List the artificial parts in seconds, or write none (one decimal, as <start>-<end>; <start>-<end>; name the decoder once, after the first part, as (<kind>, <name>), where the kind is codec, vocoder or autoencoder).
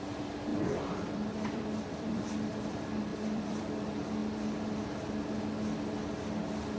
0.5-2.3 (vocoder, BigVGAN v2); 3.1-3.6